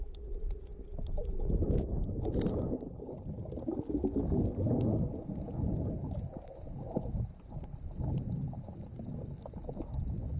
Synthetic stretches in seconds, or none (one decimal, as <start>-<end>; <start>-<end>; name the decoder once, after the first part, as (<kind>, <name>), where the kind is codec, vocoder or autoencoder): none